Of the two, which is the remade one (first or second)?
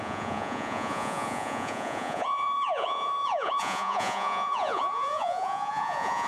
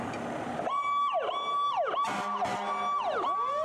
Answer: first